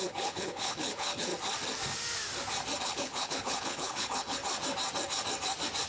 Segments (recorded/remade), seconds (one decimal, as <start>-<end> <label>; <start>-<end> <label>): 0.0-1.3 remade; 1.3-2.8 recorded; 2.8-4.4 remade; 4.4-5.9 recorded